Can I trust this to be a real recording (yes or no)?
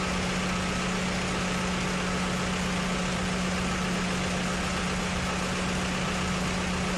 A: yes